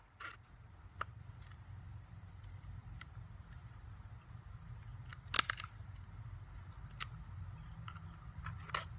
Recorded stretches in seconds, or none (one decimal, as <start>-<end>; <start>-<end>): 0.0-9.0